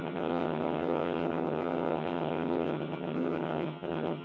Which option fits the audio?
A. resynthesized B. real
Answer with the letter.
A